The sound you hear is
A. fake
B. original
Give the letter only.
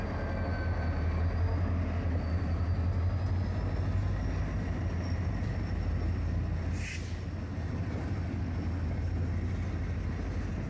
B